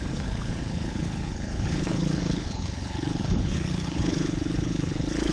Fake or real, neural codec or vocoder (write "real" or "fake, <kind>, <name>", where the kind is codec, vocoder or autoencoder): fake, codec, HILCodec